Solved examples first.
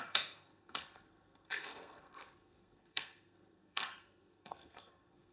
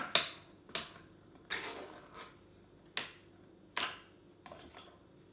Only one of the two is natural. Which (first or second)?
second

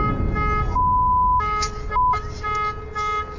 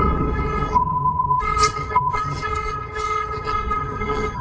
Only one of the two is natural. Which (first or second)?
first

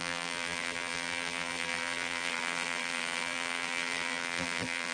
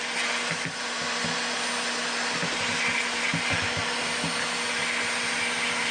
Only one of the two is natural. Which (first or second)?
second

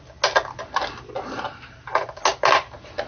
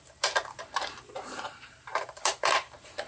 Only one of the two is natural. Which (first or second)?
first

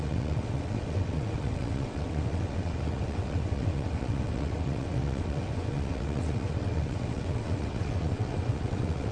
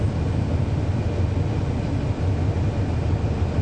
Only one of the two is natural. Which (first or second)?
second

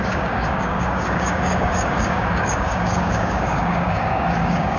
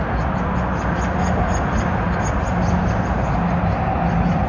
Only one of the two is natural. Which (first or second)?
second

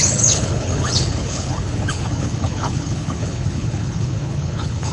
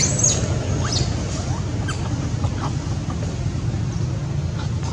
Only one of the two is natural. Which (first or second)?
second